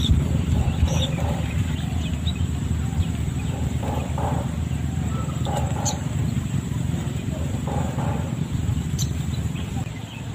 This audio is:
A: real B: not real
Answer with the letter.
B